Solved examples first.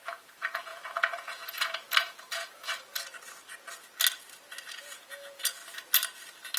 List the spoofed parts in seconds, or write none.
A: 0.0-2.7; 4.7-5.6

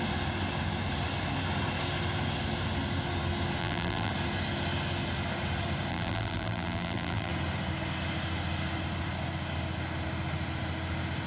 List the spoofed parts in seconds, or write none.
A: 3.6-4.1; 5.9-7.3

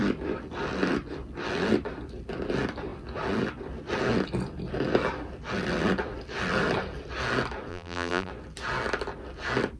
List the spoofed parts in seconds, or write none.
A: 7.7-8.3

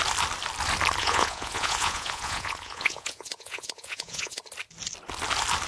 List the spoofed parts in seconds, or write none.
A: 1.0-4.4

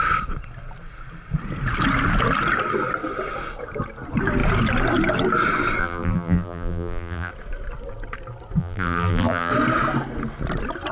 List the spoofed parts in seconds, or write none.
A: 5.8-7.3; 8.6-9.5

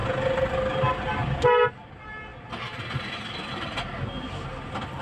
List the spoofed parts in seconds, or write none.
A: none

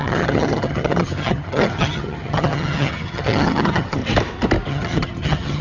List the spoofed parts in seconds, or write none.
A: 0.0-4.0; 4.7-5.6